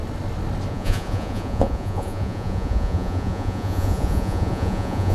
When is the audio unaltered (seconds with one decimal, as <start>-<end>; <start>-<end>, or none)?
0.0-0.7